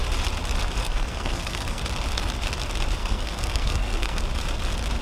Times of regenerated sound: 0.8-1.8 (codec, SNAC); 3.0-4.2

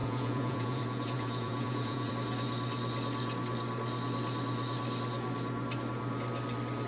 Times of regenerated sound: 0.0-2.1 (vocoder, Vocos)

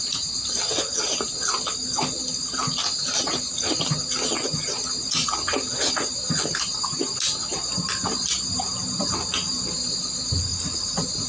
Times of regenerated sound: 10.5-11.3 (vocoder, Vocos)

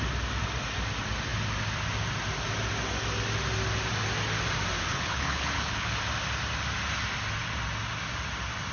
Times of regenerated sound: 4.9-5.9 (codec, HILCodec)

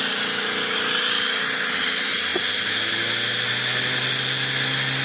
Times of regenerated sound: none

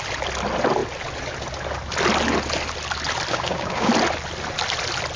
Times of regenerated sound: 3.3-3.9 (codec, DAC)